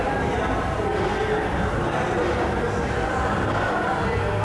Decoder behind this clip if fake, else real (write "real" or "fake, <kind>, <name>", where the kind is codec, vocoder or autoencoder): real